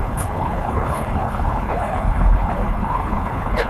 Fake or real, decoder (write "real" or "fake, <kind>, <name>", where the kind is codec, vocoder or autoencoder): fake, codec, HILCodec